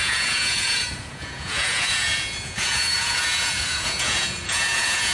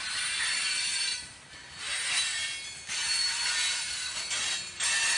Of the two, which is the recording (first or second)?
second